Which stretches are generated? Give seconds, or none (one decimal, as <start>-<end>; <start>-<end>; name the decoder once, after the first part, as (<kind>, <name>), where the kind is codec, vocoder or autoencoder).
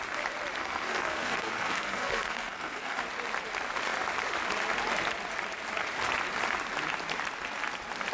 0.6-3.0 (codec, SNAC)